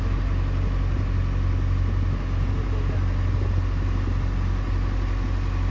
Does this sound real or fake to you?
real